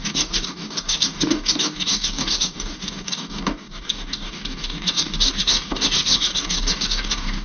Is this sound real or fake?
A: fake